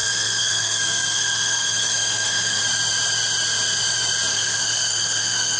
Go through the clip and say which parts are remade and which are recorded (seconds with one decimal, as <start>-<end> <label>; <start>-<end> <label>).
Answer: 0.0-2.6 remade; 2.6-4.3 recorded; 4.3-5.6 remade